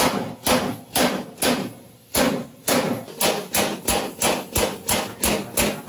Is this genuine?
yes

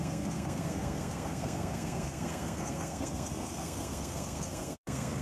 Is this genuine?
no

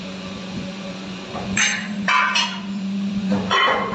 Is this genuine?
no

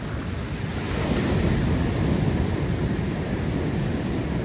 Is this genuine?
yes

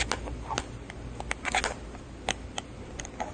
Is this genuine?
yes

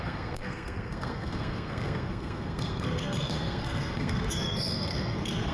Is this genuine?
no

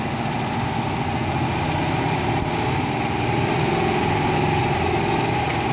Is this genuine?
yes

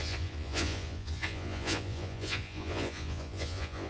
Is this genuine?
no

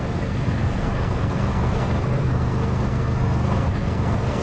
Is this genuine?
no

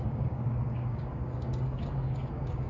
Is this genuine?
no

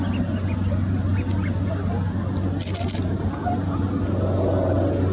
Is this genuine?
yes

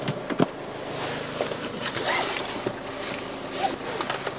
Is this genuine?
yes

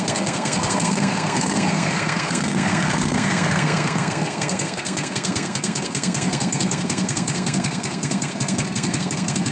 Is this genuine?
no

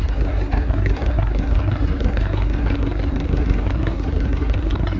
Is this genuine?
no